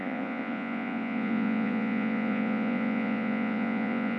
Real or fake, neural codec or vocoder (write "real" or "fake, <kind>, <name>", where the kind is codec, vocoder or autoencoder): fake, vocoder, Vocos